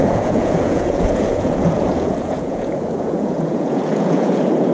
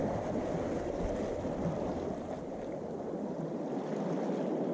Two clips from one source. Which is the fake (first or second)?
first